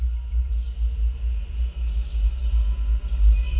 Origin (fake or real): real